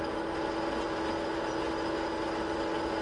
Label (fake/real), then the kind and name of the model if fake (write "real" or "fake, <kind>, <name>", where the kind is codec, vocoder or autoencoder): real